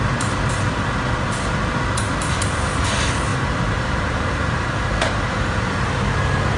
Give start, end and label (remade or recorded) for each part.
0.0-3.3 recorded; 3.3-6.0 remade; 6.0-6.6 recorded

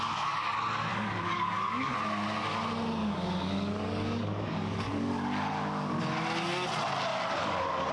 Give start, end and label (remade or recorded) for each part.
0.0-0.9 recorded; 0.9-1.9 remade; 1.9-3.0 recorded; 3.0-6.0 remade; 6.0-7.1 recorded; 7.1-7.9 remade

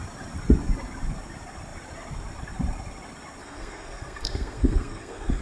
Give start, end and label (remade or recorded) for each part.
0.0-3.4 recorded; 3.4-5.4 remade